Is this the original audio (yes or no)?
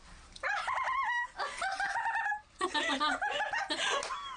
yes